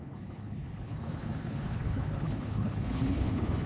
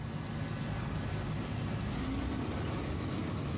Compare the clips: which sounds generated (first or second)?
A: first